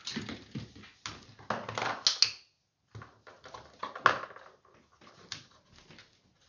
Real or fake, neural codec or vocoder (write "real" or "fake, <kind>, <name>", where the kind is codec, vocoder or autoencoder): real